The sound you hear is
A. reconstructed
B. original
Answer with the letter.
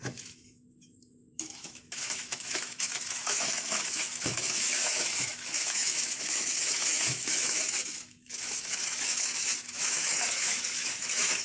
A